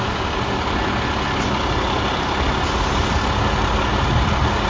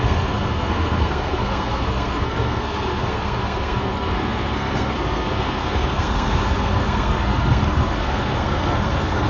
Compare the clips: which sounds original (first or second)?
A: first